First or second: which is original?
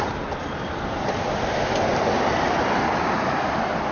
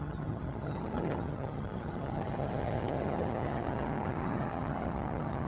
first